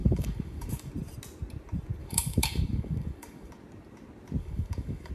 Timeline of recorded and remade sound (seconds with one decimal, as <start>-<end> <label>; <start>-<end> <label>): 0.0-0.9 remade; 0.9-2.0 recorded; 2.0-3.5 remade; 3.5-4.4 recorded; 4.4-5.1 remade